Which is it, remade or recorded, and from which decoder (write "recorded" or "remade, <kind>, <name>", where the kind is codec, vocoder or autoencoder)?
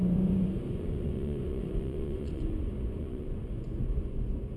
remade, vocoder, Vocos